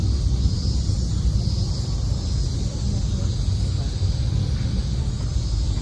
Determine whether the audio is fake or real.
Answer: real